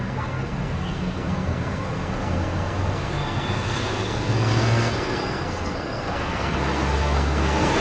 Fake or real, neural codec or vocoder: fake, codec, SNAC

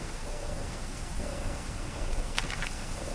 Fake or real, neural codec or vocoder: fake, codec, SNAC